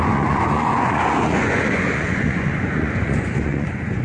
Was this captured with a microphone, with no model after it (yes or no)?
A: no